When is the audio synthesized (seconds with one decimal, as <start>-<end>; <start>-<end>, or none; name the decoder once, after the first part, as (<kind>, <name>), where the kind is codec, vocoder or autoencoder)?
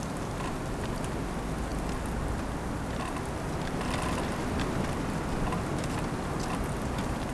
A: none